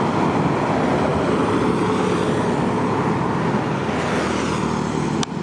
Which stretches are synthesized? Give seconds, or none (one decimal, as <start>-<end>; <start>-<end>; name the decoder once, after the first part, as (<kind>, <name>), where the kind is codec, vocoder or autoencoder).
none

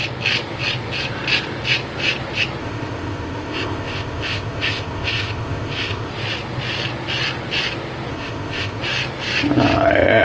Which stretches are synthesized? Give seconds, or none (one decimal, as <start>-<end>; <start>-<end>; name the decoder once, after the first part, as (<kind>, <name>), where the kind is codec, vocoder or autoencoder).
2.6-6.1 (codec, ZipCodec); 8.1-8.8

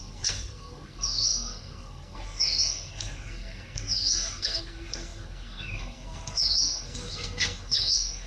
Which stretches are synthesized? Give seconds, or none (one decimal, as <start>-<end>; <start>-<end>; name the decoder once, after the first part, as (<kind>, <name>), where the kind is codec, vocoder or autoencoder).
0.0-8.3 (codec, SNAC)

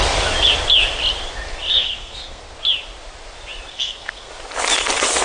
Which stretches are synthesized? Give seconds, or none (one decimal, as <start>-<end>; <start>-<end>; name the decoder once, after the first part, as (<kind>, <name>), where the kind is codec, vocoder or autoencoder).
1.7-2.4 (codec, SNAC); 3.7-4.3